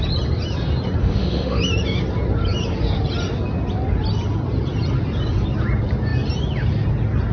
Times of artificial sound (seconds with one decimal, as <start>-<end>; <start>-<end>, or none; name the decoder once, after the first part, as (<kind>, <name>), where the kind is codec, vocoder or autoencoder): 1.0-1.6 (autoencoder, DAC-VAE)